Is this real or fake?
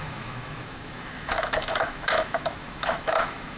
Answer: fake